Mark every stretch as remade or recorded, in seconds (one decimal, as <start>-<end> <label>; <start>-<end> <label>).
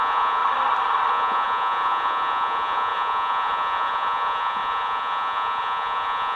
0.0-0.4 remade; 0.4-1.1 recorded; 1.1-6.4 remade